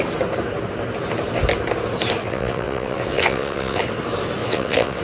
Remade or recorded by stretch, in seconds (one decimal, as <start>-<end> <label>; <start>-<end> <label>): 0.0-2.2 recorded; 2.2-3.8 remade; 3.8-4.4 recorded; 4.4-5.0 remade